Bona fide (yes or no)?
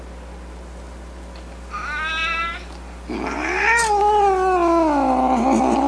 yes